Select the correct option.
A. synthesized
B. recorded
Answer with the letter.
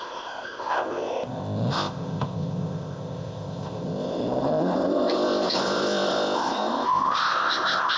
A